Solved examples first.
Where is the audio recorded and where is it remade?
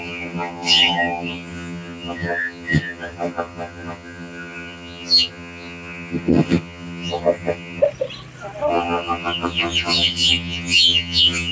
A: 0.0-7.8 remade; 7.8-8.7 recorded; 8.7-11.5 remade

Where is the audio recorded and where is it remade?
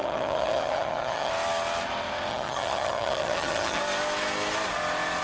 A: 0.0-1.3 remade; 1.3-2.3 recorded; 2.3-3.8 remade; 3.8-5.2 recorded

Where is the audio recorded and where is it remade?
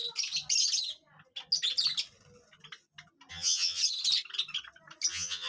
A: 0.0-3.3 recorded; 3.3-3.8 remade; 3.8-5.1 recorded; 5.1-5.5 remade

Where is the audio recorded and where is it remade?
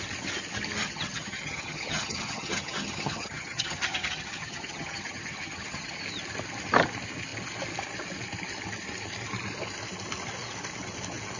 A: 0.0-0.8 recorded; 0.8-6.0 remade; 6.0-11.4 recorded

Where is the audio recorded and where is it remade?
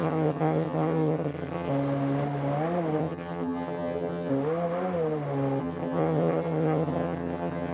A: 0.0-1.7 remade; 1.7-3.0 recorded; 3.0-4.3 remade; 4.3-5.6 recorded; 5.6-7.7 remade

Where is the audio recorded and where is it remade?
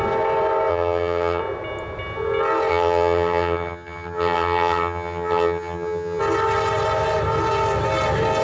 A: 0.0-0.7 recorded; 0.7-1.4 remade; 1.4-2.7 recorded; 2.7-6.2 remade; 6.2-8.4 recorded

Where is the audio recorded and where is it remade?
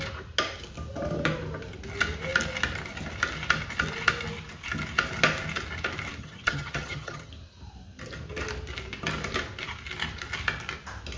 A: 0.0-6.2 recorded; 6.2-7.3 remade; 7.3-11.2 recorded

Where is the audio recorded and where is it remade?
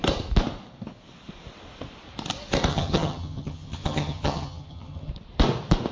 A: 0.0-2.7 recorded; 2.7-5.1 remade; 5.1-5.9 recorded